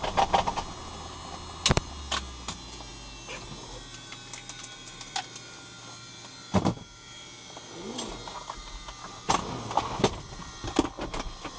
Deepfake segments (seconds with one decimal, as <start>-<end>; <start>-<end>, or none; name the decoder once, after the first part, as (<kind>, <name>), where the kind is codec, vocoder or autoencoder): none